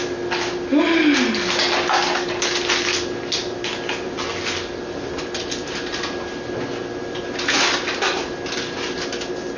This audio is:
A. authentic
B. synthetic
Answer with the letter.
A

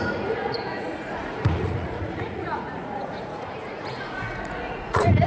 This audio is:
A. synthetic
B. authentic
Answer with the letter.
A